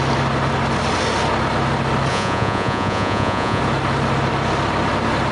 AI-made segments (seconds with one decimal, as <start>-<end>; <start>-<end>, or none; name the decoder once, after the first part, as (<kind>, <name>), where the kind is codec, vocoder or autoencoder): 2.1-3.6 (vocoder, Vocos)